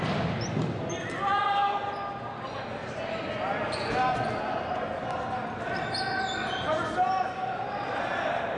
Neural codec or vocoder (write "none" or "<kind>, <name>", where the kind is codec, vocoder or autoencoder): none